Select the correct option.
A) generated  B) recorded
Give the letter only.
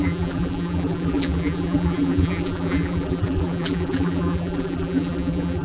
A